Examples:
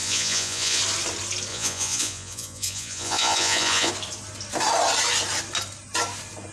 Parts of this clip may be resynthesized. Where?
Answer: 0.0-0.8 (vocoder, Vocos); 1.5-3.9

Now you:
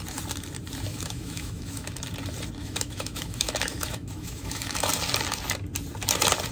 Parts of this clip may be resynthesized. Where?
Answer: 0.9-2.0 (autoencoder, DAC-VAE); 2.6-4.9

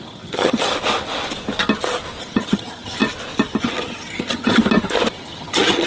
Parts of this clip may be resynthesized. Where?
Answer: 0.0-0.7 (vocoder, HiFi-GAN); 2.2-3.0; 3.6-4.6; 5.1-5.9

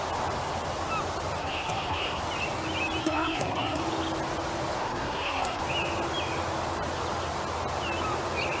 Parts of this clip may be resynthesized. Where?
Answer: 1.4-2.2 (codec, SNAC); 3.0-3.8; 4.8-5.6

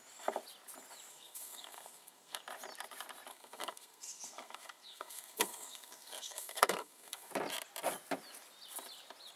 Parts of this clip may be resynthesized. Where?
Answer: 1.1-2.4 (codec, SNAC); 3.3-7.3

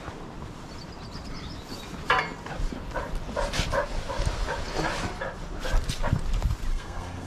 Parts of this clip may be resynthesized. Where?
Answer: 6.7-7.3 (codec, SNAC)

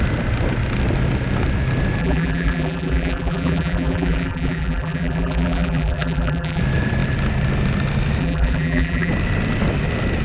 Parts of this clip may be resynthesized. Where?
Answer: 2.0-6.6 (vocoder, BigVGAN v2); 8.2-9.1